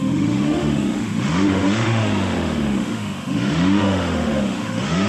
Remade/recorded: remade